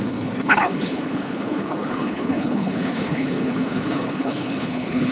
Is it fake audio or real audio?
fake